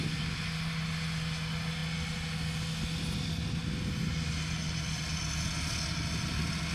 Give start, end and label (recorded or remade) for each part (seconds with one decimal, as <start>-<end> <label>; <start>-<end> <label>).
0.0-6.7 recorded